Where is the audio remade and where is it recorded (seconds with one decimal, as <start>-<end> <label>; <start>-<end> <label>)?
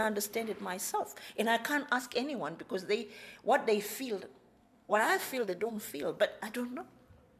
0.0-4.3 recorded; 4.3-5.7 remade; 5.7-7.4 recorded